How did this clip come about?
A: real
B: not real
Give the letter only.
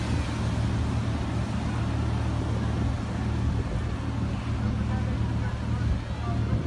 A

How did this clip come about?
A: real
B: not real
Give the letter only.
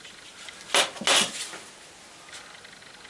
A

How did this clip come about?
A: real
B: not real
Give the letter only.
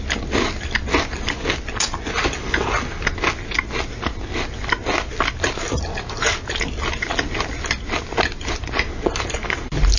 A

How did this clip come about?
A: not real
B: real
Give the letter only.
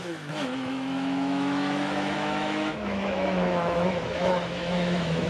A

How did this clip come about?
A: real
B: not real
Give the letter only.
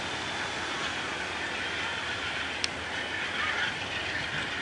A